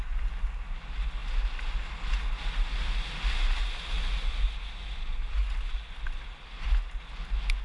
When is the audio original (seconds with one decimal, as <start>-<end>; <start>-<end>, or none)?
0.0-7.6